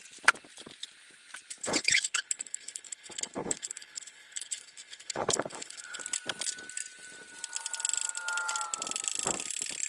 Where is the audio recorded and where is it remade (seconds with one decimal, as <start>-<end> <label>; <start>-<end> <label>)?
0.0-1.6 recorded; 1.6-6.0 remade; 6.0-9.9 recorded